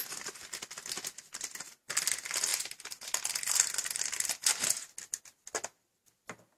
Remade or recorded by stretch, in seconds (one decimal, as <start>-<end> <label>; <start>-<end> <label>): 0.0-6.6 recorded

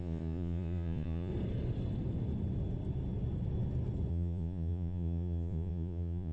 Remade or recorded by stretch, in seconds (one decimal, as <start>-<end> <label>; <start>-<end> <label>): 0.0-1.3 remade; 1.3-4.1 recorded; 4.1-6.3 remade

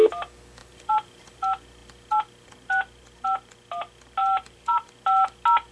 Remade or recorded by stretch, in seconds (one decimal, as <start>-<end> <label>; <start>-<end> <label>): 0.0-0.6 recorded; 0.6-1.4 remade; 1.4-4.2 recorded; 4.2-4.9 remade; 4.9-5.7 recorded

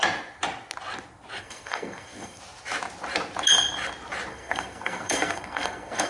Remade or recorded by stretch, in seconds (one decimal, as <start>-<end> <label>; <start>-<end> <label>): 0.0-1.4 recorded; 1.4-2.4 remade; 2.4-4.3 recorded; 4.3-6.1 remade

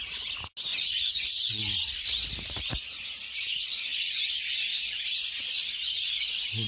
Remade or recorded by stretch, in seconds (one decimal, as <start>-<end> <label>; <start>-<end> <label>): 0.0-0.7 recorded; 0.7-1.6 remade; 1.6-6.7 recorded